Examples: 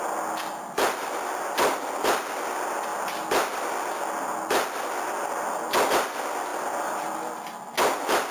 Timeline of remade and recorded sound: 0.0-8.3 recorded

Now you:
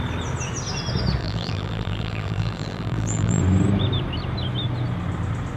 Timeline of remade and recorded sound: 0.0-1.2 recorded; 1.2-3.4 remade; 3.4-5.6 recorded

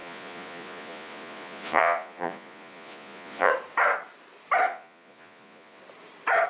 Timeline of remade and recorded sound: 0.0-3.5 remade; 3.5-4.7 recorded; 4.7-5.8 remade; 5.8-6.5 recorded

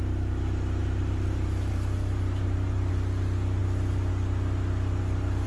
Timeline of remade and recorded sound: 0.0-0.8 recorded; 0.8-2.9 remade; 2.9-5.5 recorded

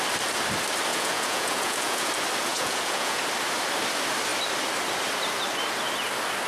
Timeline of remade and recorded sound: 0.0-0.9 recorded; 0.9-2.1 remade; 2.1-2.5 recorded; 2.5-3.2 remade; 3.2-6.5 recorded